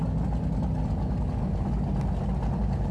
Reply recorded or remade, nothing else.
recorded